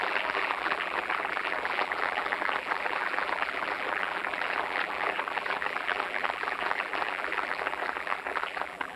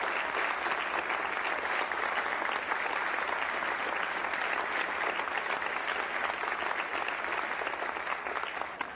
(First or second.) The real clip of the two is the second